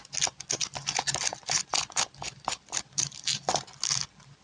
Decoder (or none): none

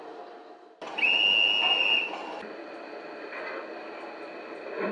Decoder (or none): none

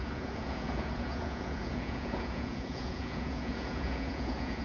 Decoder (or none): vocoder, Vocos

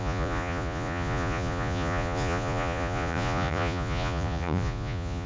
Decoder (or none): vocoder, Vocos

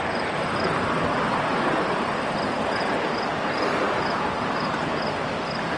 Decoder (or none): none